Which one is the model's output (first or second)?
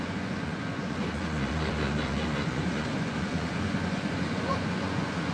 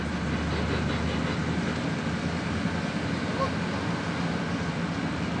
first